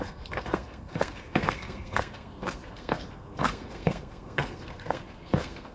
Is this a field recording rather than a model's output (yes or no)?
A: no